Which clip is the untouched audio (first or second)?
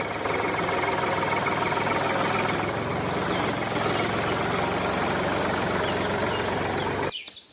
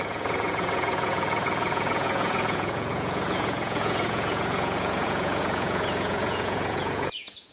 first